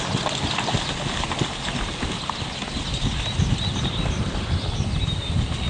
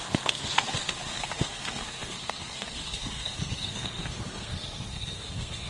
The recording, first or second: first